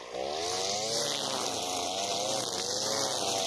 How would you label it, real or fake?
real